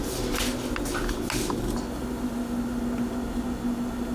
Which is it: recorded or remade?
recorded